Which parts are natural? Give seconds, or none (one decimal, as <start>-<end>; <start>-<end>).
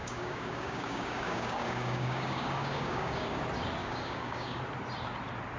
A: 3.4-3.8; 4.6-5.6